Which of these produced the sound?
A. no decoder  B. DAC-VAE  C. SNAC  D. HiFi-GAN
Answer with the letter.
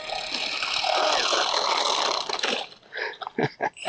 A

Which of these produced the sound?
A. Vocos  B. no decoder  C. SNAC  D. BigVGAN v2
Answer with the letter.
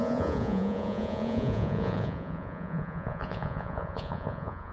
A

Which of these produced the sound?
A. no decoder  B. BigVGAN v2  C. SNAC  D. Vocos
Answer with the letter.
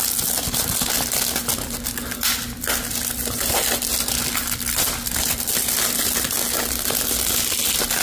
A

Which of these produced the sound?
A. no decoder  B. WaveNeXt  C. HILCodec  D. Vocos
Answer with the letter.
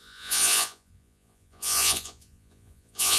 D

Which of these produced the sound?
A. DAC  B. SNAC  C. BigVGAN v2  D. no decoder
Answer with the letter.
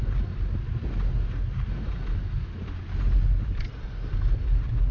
D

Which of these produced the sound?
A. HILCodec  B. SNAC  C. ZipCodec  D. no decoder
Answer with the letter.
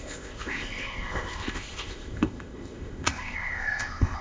C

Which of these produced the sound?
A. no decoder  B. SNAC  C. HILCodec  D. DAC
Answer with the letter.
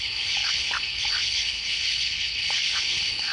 C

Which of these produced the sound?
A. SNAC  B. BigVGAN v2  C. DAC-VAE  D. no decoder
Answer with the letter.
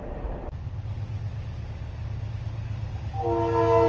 D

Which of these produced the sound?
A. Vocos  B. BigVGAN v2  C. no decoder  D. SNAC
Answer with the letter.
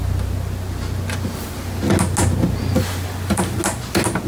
C